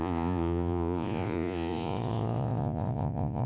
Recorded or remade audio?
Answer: remade